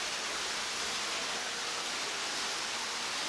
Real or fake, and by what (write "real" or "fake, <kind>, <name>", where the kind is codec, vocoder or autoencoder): real